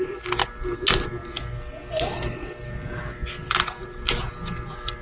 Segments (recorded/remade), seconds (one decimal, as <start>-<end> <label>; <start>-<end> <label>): 0.0-5.0 recorded